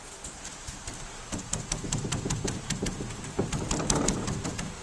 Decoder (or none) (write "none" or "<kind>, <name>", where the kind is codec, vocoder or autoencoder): none